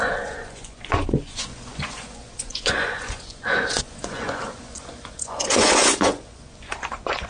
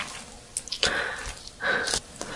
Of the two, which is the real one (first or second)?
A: second